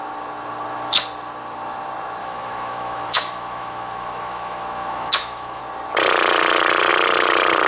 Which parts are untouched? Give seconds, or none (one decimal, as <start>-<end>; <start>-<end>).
0.0-2.2; 5.6-7.7